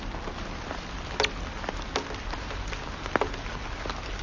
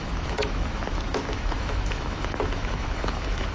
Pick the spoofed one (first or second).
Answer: second